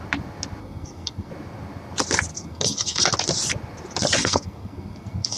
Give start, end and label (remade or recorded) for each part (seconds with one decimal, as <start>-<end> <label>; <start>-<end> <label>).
0.0-0.6 recorded; 0.6-1.3 remade; 1.3-2.3 recorded; 2.3-3.0 remade; 3.0-4.2 recorded; 4.2-5.4 remade